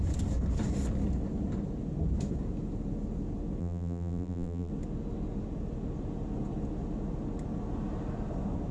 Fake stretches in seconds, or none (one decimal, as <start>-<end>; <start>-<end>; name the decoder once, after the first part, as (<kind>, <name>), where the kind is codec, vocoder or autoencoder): 3.6-4.7 (vocoder, BigVGAN v2)